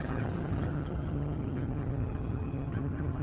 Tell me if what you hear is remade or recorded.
remade